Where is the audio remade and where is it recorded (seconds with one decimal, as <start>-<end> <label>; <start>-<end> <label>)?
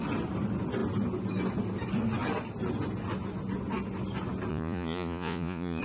0.0-4.5 recorded; 4.5-5.8 remade